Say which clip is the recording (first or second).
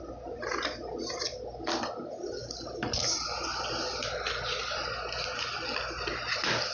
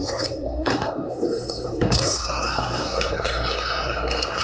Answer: first